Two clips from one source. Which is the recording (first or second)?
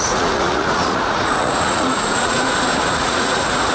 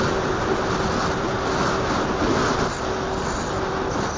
second